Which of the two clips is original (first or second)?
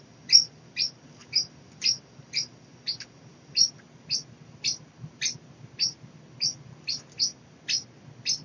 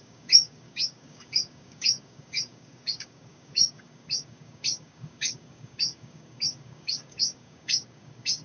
first